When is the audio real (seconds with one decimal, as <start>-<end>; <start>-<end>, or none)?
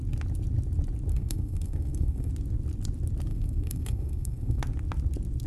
0.0-1.1; 2.3-3.3; 4.6-5.5